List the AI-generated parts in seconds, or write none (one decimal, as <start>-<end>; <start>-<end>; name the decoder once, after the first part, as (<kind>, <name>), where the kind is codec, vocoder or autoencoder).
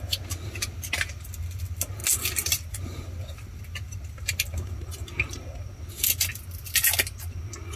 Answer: none